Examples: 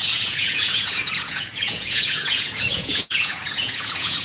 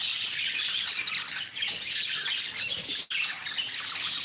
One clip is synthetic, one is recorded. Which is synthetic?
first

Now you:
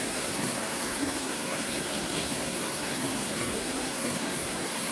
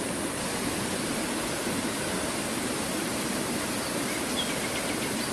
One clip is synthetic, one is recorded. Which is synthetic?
first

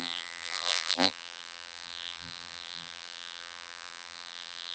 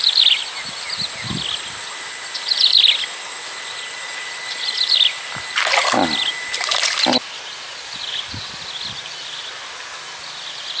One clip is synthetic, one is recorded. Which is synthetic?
first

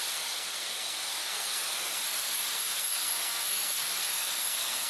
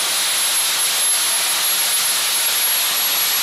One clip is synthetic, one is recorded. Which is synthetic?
first